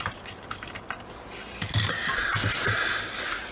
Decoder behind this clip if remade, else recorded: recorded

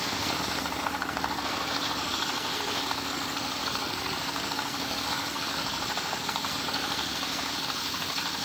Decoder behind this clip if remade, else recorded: remade, codec, SNAC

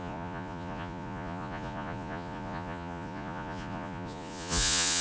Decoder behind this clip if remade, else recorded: remade, vocoder, Vocos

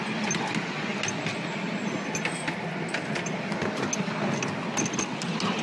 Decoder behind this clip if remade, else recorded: recorded